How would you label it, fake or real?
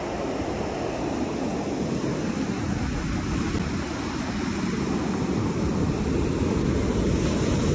real